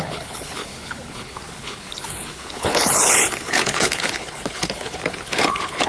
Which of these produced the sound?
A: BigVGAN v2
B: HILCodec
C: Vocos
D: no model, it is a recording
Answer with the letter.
B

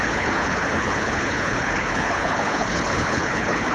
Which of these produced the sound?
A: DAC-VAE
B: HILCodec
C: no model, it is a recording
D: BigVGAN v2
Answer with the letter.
B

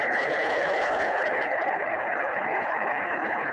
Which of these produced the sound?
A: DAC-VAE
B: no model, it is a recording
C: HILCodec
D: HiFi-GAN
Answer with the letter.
C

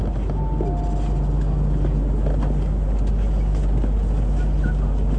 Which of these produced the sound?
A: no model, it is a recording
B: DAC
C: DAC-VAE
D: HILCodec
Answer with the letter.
A